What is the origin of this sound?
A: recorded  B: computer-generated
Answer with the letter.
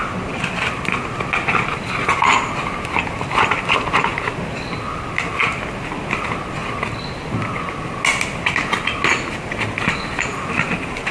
A